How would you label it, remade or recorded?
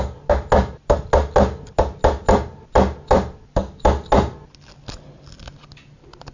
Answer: recorded